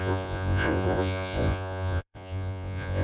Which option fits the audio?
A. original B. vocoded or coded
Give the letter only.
B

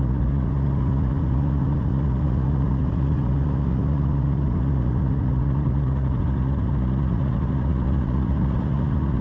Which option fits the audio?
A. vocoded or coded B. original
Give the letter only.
A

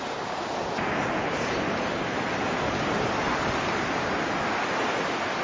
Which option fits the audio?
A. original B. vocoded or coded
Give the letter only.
A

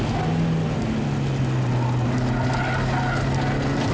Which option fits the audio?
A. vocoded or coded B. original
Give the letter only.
B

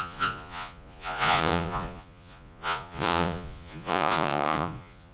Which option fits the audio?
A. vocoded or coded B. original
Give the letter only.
A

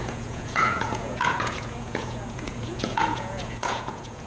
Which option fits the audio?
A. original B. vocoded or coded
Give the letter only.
B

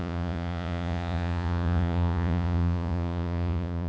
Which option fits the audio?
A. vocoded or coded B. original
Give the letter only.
A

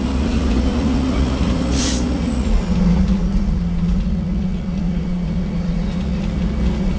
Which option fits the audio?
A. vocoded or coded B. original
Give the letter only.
A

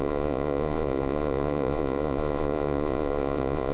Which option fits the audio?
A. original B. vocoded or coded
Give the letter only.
B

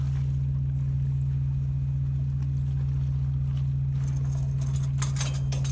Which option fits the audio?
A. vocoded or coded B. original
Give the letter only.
B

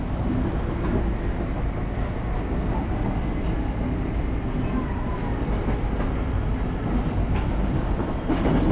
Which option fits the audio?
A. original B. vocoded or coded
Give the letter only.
A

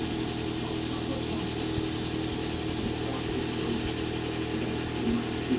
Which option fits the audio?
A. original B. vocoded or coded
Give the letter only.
A